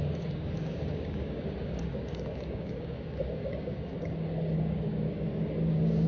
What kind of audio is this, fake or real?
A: fake